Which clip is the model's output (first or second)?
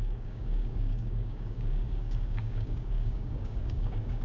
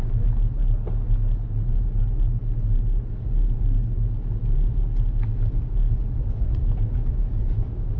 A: first